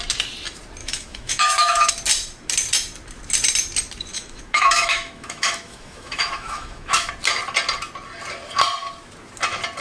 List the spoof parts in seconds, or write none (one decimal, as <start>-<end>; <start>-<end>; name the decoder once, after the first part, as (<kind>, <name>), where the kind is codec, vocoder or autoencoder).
0.8-1.9 (autoencoder, DAC-VAE); 4.1-7.1